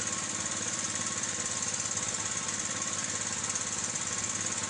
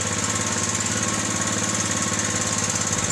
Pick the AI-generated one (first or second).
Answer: first